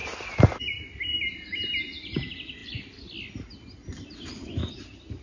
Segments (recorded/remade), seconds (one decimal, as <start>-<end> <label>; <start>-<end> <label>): 0.0-5.2 recorded

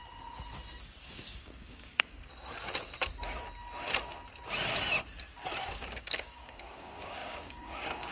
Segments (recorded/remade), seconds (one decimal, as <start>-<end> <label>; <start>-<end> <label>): 0.0-0.8 recorded; 0.8-2.3 remade; 2.3-5.7 recorded; 5.7-8.1 remade

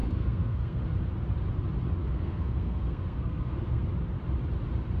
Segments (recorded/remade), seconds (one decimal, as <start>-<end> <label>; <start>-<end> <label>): 0.0-0.8 remade; 0.8-2.0 recorded; 2.0-3.8 remade; 3.8-5.0 recorded

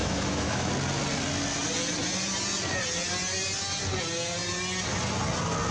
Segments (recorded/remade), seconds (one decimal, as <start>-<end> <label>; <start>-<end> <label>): 0.0-0.7 remade; 0.7-5.7 recorded

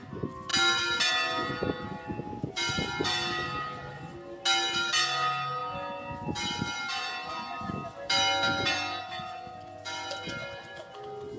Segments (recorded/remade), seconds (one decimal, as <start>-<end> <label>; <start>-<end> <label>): 0.0-11.4 recorded

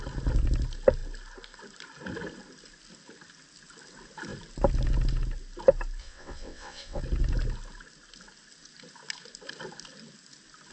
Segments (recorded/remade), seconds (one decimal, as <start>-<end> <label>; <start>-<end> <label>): 0.0-6.0 recorded; 6.0-7.0 remade; 7.0-10.7 recorded